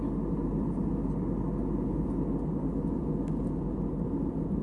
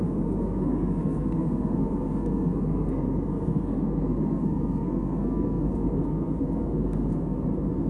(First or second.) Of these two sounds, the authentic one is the first